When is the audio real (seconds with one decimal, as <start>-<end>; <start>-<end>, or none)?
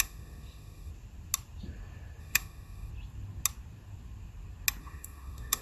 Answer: 0.9-2.2; 2.9-4.8